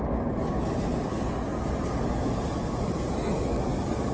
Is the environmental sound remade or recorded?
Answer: recorded